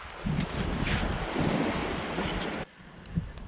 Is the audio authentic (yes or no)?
yes